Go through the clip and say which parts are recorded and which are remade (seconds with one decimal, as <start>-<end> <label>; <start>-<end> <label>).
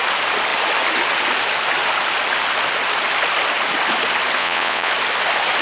0.0-4.4 recorded; 4.4-4.9 remade; 4.9-5.6 recorded